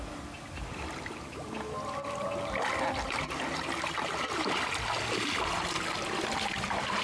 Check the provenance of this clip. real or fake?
real